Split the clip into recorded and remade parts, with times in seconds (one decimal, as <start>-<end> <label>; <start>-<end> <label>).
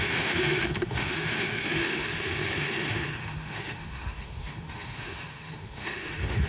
0.0-6.5 remade